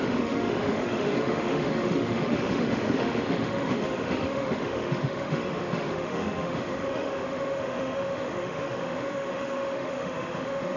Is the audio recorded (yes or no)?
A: no